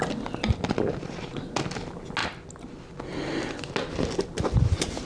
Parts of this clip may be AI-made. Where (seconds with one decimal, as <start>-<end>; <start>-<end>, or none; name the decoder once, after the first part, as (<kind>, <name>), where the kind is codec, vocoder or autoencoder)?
none